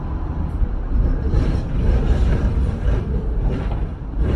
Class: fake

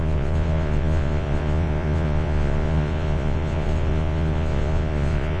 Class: fake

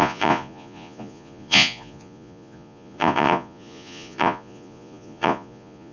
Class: fake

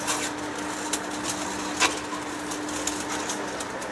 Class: real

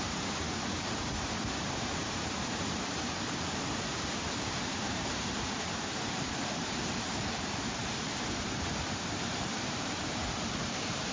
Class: fake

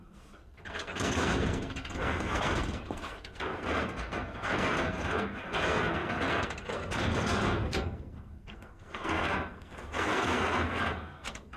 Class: fake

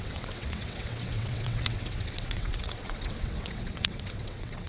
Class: fake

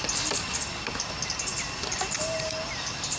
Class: real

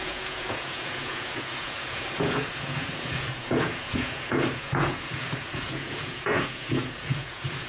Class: fake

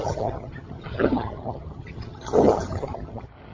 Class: fake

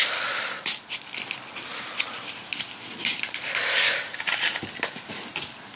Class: fake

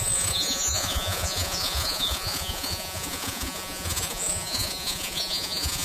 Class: fake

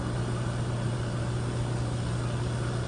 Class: real